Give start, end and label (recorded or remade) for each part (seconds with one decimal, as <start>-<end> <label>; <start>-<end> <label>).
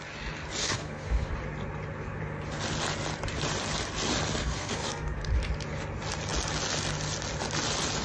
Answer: 0.0-0.6 recorded; 0.6-1.3 remade; 1.3-4.4 recorded; 4.4-5.3 remade; 5.3-8.0 recorded